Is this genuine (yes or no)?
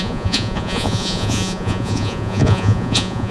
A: no